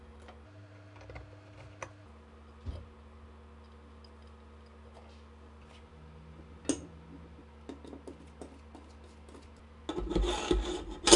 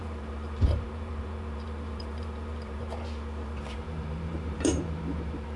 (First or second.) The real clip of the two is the first